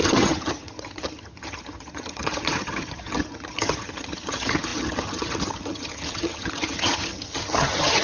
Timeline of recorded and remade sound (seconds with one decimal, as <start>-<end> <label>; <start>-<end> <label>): 0.0-8.0 remade

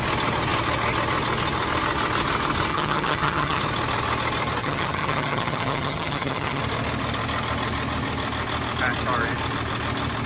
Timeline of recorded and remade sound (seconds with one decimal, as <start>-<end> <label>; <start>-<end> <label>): 0.0-2.7 recorded; 2.7-3.6 remade; 3.6-4.6 recorded; 4.6-6.6 remade; 6.6-10.3 recorded

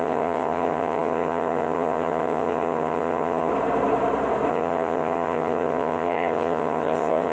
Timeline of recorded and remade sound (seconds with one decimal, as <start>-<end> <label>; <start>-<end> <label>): 0.0-3.5 remade; 3.5-4.5 recorded; 4.5-7.3 remade

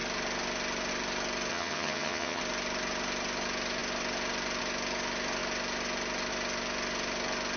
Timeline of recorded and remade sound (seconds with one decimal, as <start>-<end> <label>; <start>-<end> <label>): 0.0-1.5 recorded; 1.5-2.4 remade; 2.4-7.6 recorded

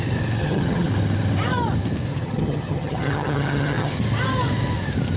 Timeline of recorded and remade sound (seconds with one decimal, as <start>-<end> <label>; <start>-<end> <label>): 0.0-0.4 recorded; 0.4-0.9 remade; 0.9-2.1 recorded; 2.1-4.0 remade; 4.0-5.2 recorded

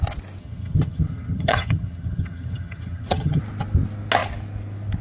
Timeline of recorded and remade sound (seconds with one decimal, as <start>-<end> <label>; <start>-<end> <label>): 0.0-0.4 recorded; 0.4-3.4 remade; 3.4-5.0 recorded

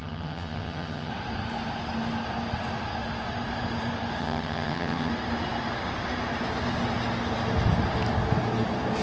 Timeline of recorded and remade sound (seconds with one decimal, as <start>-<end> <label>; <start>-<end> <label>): 0.0-1.1 remade; 1.1-4.2 recorded; 4.2-5.1 remade; 5.1-9.0 recorded